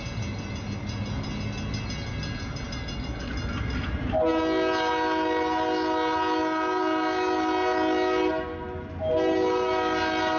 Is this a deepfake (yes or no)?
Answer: no